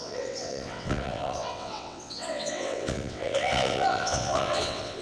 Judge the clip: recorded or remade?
remade